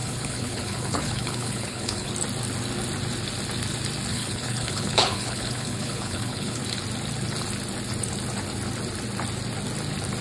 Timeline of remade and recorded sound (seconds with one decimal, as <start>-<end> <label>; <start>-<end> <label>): 0.0-2.1 remade; 2.1-4.1 recorded; 4.1-6.6 remade; 6.6-10.2 recorded